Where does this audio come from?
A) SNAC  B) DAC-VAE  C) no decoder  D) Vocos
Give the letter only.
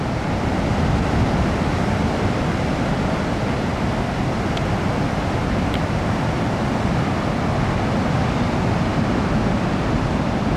C